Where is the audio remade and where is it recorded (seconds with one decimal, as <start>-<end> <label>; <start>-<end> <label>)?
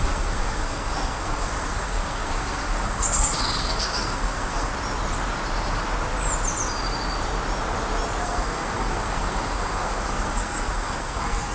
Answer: 0.0-4.7 remade; 4.7-8.2 recorded; 8.2-11.5 remade